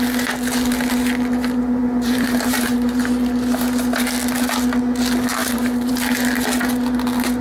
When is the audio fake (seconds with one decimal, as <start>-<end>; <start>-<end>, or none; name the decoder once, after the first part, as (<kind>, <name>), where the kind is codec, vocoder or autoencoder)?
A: 1.8-3.0 (vocoder, BigVGAN v2); 5.4-5.9